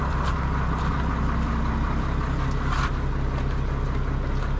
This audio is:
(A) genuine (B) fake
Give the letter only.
A